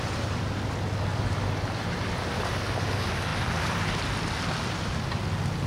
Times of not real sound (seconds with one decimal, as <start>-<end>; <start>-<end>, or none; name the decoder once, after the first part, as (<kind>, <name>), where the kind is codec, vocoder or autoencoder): none